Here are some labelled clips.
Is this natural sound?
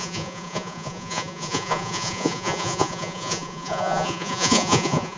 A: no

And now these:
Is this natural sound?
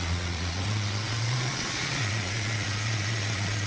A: no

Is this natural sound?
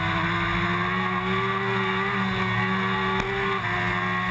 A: yes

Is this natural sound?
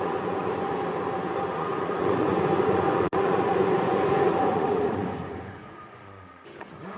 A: no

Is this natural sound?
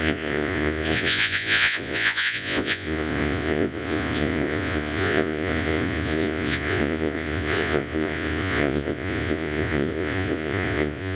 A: no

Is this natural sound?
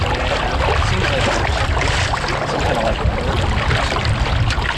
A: yes